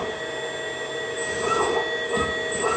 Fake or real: real